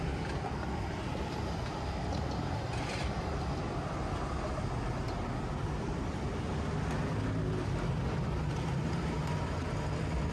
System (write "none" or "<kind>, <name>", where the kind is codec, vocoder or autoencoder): none